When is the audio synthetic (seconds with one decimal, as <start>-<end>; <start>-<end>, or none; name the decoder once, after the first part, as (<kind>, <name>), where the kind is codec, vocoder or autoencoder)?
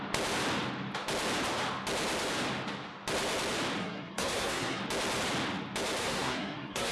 3.8-4.8 (codec, SNAC); 6.0-6.9